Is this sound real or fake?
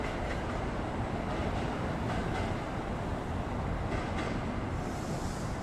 real